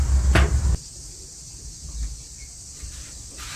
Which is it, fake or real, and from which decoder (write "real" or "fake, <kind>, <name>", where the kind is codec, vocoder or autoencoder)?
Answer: real